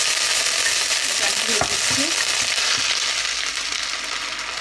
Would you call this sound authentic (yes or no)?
yes